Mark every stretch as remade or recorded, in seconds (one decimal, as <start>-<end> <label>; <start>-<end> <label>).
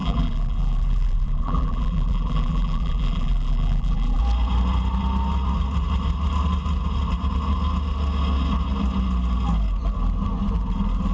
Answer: 0.0-4.2 remade; 4.2-11.1 recorded